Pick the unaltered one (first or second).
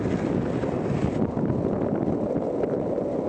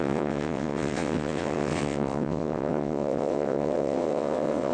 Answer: first